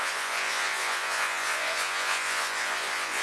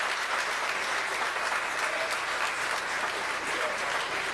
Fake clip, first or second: first